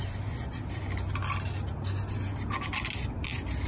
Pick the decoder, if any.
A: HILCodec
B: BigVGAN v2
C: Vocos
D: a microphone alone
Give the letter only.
D